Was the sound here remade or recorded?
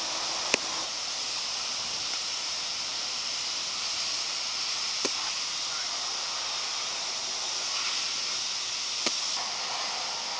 remade